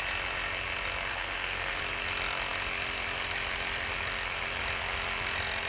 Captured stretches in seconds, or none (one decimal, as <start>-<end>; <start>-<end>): 0.0-1.1; 1.8-5.7